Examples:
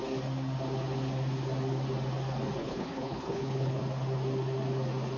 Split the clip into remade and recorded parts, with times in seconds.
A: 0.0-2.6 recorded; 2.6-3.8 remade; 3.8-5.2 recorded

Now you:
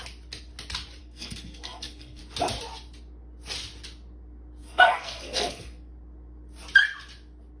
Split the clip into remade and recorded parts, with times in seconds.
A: 0.0-1.0 recorded; 1.0-2.2 remade; 2.2-4.6 recorded; 4.6-5.9 remade; 5.9-7.6 recorded

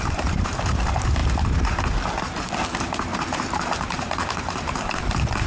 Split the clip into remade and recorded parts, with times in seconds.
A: 0.0-1.2 remade; 1.2-2.2 recorded; 2.2-5.5 remade

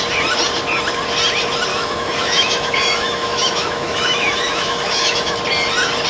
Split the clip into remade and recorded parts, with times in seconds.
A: 0.0-1.7 recorded; 1.7-5.4 remade; 5.4-6.1 recorded

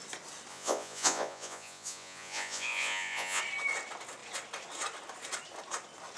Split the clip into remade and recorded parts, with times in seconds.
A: 0.0-0.5 recorded; 0.5-3.4 remade; 3.4-6.2 recorded

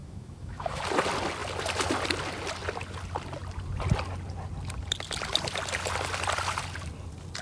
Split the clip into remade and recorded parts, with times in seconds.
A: 0.0-0.8 remade; 0.8-7.4 recorded

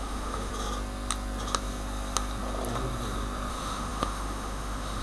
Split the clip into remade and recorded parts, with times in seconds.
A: 0.0-0.5 remade; 0.5-3.5 recorded; 3.5-5.0 remade